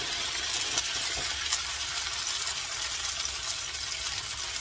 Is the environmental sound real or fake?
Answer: real